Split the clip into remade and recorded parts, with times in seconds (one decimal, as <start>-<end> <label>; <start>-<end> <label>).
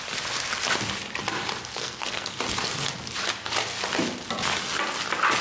0.0-1.7 recorded; 1.7-2.4 remade; 2.4-5.4 recorded